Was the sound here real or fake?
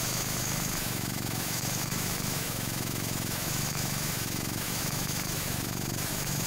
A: fake